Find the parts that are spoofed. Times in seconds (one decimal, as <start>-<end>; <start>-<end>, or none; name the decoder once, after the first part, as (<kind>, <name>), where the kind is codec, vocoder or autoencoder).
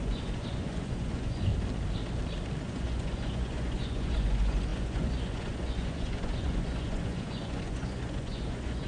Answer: 0.0-1.5 (vocoder, Vocos); 2.6-8.9